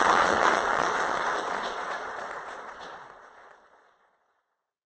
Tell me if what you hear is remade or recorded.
remade